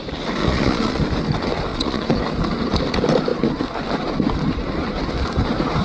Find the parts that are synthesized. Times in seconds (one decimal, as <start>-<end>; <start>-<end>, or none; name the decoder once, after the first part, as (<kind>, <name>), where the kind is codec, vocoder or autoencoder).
0.4-1.0 (vocoder, Vocos); 1.7-2.2